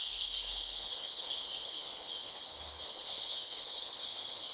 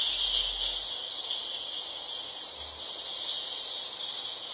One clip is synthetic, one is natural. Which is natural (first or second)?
second